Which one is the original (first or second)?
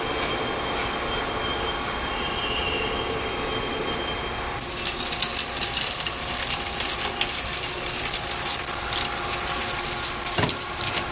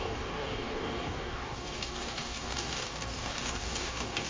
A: first